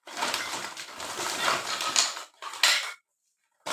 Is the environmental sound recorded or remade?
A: recorded